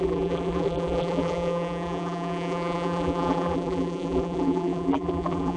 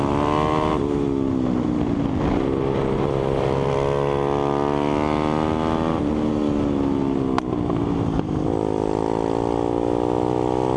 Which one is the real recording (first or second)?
second